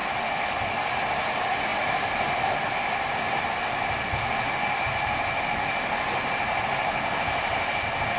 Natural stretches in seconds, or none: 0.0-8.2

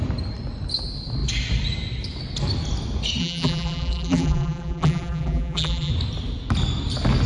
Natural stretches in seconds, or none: 0.0-3.2; 5.9-7.3